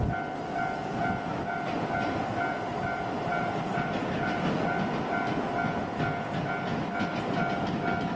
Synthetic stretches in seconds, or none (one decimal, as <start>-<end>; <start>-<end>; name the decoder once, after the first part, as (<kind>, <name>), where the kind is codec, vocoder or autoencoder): 2.7-5.0 (vocoder, BigVGAN v2)